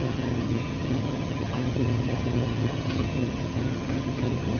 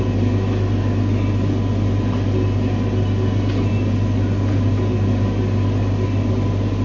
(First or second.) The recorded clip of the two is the second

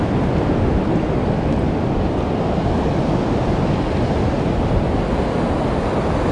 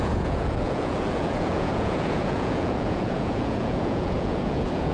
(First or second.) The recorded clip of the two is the first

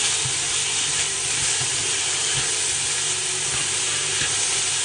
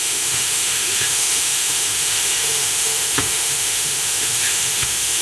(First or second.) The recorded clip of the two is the first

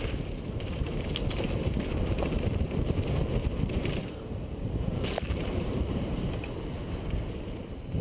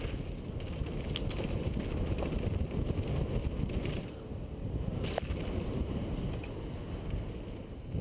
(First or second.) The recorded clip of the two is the second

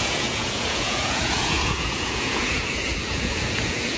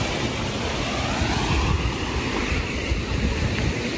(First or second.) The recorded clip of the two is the second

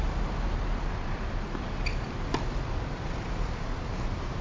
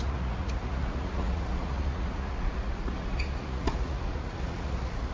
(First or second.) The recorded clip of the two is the first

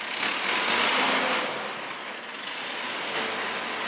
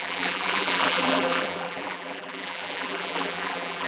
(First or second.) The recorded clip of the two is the first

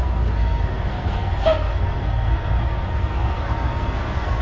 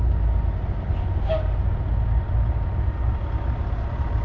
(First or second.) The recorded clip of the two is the second